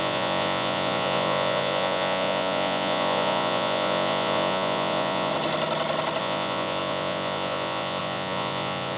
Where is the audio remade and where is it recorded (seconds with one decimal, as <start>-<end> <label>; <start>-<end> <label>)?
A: 0.0-5.3 remade; 5.3-6.2 recorded; 6.2-9.0 remade